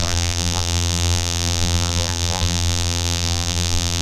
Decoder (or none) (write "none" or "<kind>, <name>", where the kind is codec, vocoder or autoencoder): vocoder, BigVGAN v2